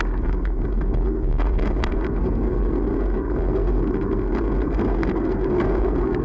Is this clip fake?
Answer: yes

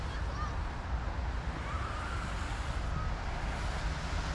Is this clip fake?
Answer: no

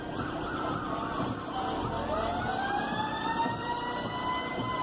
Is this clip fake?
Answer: no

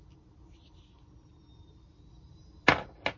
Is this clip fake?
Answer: no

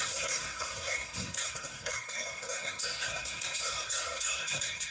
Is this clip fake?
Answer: yes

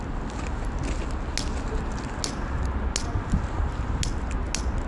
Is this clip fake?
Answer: no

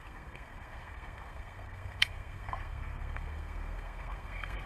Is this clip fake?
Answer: yes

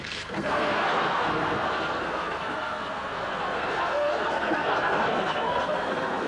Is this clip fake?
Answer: yes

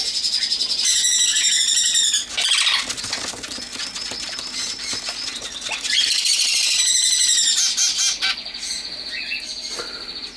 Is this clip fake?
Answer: no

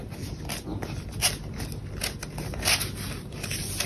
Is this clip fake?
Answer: no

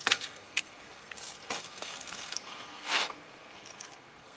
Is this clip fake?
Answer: yes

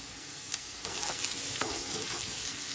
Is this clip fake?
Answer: yes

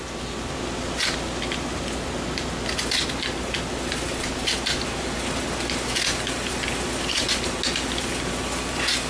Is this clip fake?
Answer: no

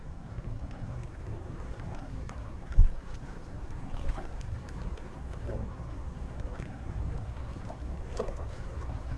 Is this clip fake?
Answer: yes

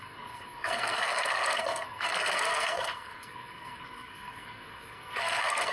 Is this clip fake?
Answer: yes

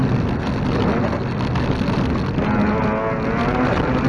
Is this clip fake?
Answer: no